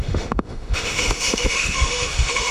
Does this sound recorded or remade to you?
remade